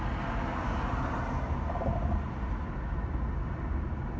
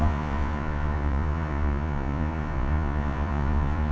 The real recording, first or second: first